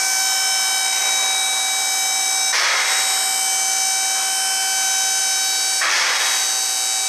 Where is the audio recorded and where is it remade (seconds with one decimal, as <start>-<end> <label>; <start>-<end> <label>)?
0.0-7.1 recorded